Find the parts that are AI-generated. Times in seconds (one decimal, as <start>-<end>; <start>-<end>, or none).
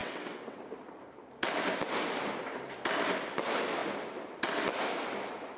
0.0-0.6